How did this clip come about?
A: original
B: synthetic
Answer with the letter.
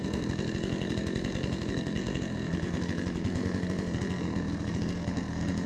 B